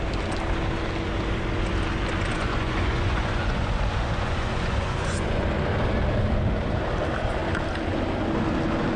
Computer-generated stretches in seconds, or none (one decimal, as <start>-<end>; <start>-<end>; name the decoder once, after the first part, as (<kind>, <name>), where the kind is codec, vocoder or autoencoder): 2.3-5.5 (vocoder, Vocos)